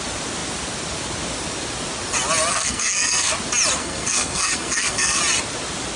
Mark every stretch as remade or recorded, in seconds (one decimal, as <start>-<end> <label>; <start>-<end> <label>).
0.0-2.5 recorded; 2.5-3.3 remade; 3.3-3.8 recorded; 3.8-5.2 remade; 5.2-6.0 recorded